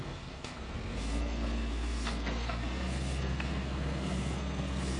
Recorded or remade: remade